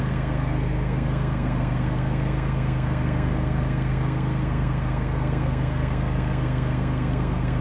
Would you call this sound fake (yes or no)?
yes